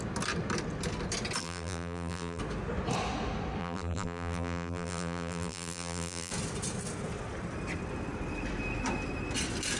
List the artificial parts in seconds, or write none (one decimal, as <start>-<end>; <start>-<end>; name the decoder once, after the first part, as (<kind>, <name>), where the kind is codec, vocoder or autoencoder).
1.4-2.4 (vocoder, BigVGAN v2); 3.6-6.3

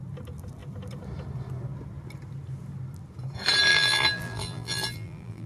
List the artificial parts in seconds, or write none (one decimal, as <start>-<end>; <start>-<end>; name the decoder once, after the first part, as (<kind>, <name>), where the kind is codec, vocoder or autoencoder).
3.7-5.5 (vocoder, BigVGAN v2)

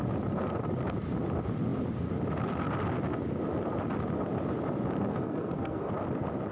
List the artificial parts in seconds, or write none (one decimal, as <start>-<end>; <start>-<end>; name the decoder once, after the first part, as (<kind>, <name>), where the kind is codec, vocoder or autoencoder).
5.1-5.9 (codec, SNAC)

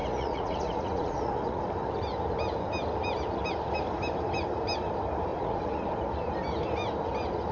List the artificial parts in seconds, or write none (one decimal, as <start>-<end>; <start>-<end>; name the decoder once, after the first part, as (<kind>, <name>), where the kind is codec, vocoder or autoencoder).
0.0-1.6 (vocoder, Vocos); 5.3-5.9

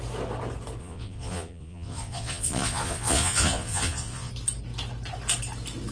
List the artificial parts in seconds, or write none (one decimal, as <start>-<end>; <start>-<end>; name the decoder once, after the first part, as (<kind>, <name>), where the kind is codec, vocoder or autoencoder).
0.8-4.3 (vocoder, Vocos)